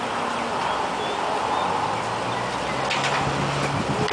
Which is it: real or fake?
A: real